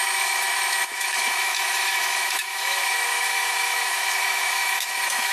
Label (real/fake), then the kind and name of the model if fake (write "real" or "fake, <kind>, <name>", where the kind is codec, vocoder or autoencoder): fake, autoencoder, DAC-VAE